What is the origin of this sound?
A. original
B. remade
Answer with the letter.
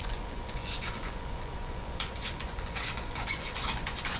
B